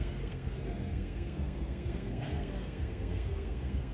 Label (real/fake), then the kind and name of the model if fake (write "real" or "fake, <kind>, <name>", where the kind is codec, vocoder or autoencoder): fake, codec, SNAC